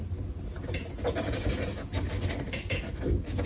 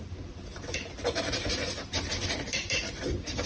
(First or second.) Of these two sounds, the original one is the first